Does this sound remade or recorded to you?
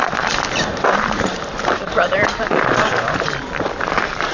remade